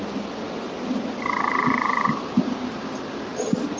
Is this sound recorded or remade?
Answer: remade